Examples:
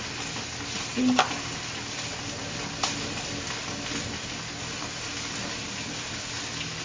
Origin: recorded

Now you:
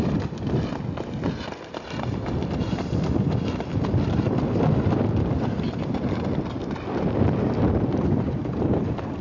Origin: recorded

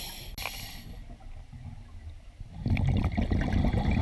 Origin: recorded